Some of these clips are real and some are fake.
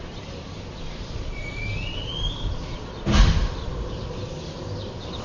fake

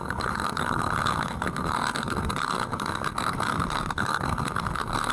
fake